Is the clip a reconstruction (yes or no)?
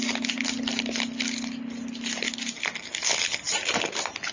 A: no